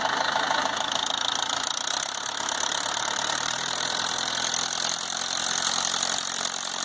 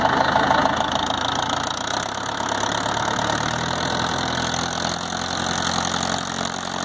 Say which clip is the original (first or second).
second